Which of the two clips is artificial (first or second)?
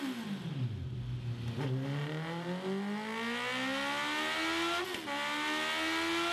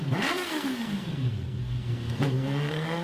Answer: second